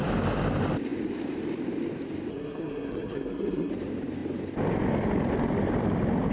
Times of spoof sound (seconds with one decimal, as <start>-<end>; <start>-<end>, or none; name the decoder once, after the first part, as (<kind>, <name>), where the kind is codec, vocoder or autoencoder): 2.3-3.7 (codec, SNAC)